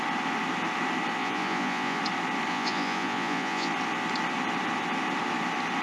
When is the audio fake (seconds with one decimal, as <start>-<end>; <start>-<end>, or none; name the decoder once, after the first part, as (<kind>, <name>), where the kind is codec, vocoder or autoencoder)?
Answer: 1.2-2.0 (vocoder, Vocos); 2.5-3.7